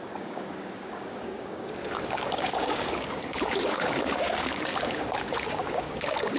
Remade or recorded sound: remade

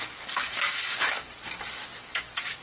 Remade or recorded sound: remade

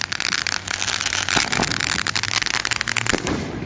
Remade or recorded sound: recorded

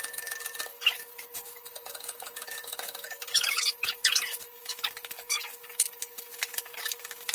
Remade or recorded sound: remade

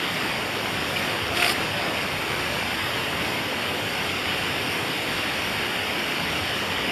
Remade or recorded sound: remade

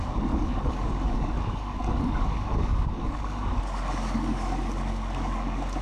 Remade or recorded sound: remade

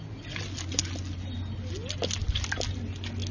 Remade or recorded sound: recorded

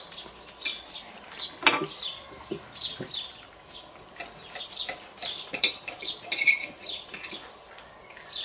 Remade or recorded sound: recorded